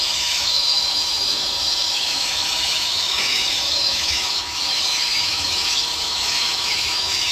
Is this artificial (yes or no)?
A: yes